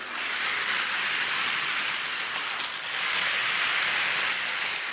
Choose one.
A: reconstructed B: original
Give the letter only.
B